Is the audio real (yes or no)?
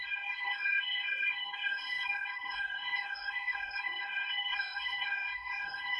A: no